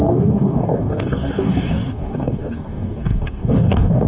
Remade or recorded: remade